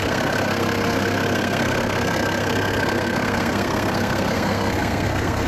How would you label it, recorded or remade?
remade